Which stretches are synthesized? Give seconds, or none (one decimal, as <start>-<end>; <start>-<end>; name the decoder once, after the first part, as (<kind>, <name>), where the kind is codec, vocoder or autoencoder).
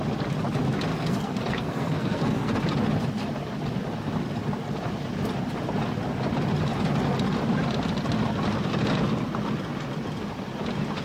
0.9-2.5 (codec, SNAC)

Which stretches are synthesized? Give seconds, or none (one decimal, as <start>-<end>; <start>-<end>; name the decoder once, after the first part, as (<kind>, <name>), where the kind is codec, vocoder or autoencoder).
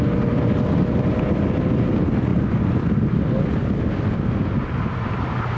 none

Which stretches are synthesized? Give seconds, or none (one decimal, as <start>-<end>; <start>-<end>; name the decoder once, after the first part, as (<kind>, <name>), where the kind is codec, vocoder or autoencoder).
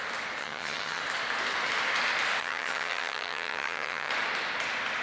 0.4-1.0 (vocoder, HiFi-GAN); 2.4-4.1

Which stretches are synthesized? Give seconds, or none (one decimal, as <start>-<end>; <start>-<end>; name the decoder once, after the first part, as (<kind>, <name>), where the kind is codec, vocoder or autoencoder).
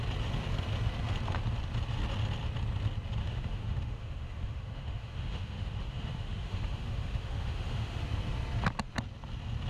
3.2-8.0 (autoencoder, DAC-VAE)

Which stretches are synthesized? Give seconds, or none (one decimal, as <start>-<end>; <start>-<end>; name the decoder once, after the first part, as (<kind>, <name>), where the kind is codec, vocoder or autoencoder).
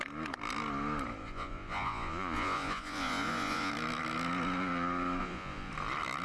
1.2-3.7 (vocoder, Vocos); 5.2-5.7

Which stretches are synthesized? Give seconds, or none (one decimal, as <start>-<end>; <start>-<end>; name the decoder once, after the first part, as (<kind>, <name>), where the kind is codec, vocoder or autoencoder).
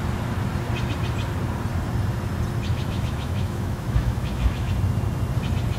2.7-4.7 (autoencoder, DAC-VAE)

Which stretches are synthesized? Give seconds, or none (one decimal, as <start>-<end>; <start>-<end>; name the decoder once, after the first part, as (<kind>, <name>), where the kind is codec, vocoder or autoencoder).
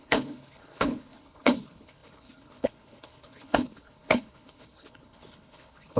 0.0-6.0 (codec, HILCodec)